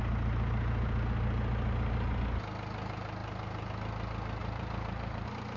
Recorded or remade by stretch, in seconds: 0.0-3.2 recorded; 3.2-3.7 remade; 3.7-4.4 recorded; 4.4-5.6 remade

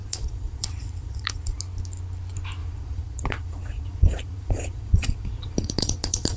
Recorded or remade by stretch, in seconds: 0.0-1.6 remade; 1.6-2.6 recorded; 2.6-6.4 remade

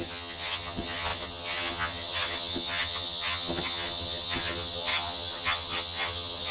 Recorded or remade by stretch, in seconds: 0.0-6.5 remade

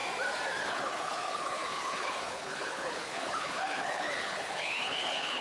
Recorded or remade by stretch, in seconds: 0.0-0.6 recorded; 0.6-5.4 remade